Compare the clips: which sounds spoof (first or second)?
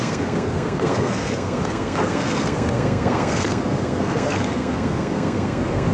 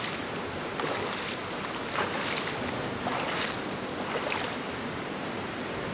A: first